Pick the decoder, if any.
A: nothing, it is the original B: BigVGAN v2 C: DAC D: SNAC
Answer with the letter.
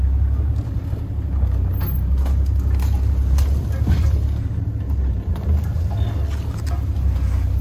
A